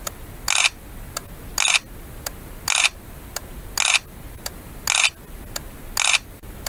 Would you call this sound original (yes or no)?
yes